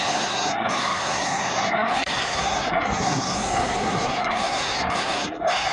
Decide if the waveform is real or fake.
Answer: fake